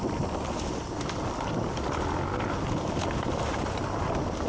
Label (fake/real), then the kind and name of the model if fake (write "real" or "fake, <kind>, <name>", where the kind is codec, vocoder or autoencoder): real